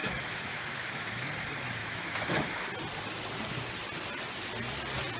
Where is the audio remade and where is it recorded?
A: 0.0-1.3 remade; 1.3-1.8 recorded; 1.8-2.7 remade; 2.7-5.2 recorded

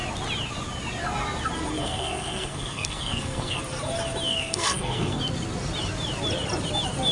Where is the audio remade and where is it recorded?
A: 0.0-1.8 recorded; 1.8-3.6 remade; 3.6-4.3 recorded; 4.3-5.2 remade; 5.2-7.1 recorded

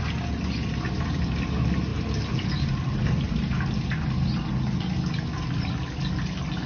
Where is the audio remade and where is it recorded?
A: 0.0-6.7 recorded

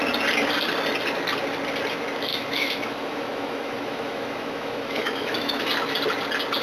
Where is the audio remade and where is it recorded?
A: 0.0-2.3 recorded; 2.3-5.7 remade; 5.7-6.6 recorded

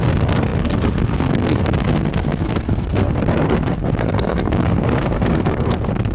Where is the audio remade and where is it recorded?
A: 0.0-6.1 remade

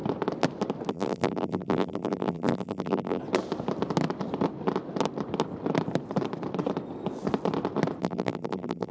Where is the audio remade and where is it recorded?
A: 0.0-0.9 recorded; 0.9-3.2 remade; 3.2-8.0 recorded; 8.0-8.9 remade

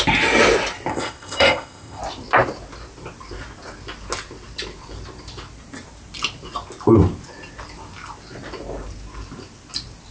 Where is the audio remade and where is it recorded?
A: 0.0-0.9 recorded; 0.9-2.0 remade; 2.0-10.1 recorded